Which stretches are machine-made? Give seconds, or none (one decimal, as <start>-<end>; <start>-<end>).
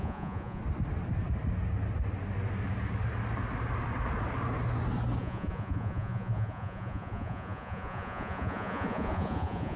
0.0-0.6; 5.2-9.8